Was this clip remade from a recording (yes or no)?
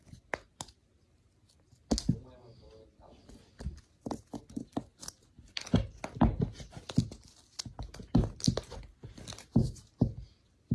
no